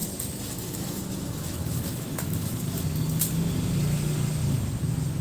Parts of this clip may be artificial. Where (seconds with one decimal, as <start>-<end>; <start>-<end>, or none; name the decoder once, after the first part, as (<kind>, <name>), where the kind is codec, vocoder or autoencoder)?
0.0-3.1 (autoencoder, DAC-VAE)